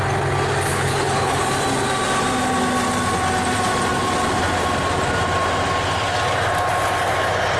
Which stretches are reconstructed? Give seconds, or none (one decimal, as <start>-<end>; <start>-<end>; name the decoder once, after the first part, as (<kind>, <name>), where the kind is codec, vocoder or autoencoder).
0.7-1.5 (codec, HILCodec)